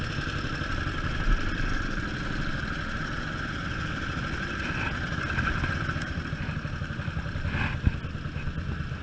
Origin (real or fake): real